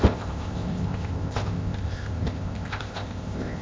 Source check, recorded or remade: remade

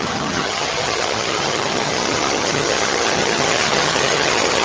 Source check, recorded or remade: remade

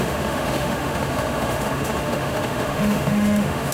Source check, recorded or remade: remade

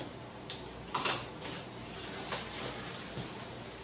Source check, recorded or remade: recorded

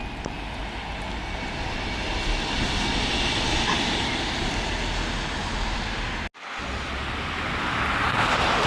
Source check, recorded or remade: recorded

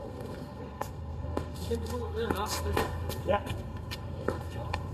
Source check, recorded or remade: remade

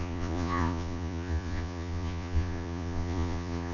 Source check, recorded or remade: remade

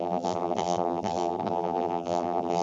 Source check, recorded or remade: remade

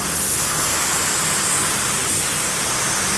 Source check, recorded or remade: recorded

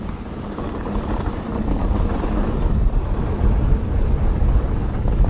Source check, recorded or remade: recorded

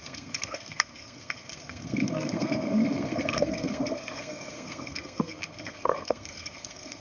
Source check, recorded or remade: remade